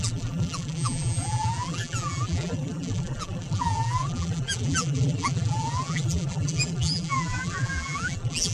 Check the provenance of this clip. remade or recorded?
remade